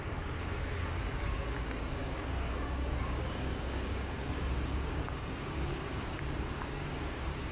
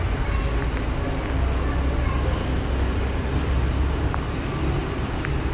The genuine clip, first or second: second